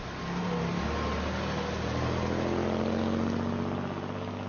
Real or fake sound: real